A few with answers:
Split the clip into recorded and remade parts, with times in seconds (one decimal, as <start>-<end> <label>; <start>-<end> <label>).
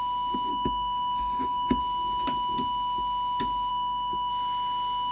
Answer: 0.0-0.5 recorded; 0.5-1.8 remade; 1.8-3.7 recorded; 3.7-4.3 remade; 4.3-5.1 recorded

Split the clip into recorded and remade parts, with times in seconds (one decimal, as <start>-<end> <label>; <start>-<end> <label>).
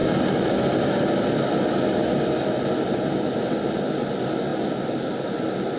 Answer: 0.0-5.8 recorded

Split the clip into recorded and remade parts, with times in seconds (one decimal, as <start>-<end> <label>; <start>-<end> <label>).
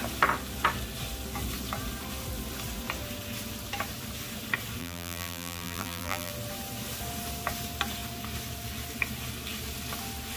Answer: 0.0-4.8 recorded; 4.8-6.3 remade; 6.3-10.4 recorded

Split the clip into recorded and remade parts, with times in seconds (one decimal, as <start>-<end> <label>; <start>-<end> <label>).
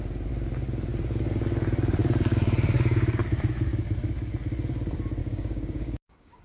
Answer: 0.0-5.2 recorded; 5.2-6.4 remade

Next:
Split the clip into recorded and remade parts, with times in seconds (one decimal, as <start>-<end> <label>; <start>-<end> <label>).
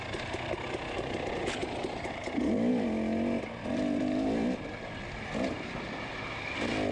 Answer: 0.0-6.9 recorded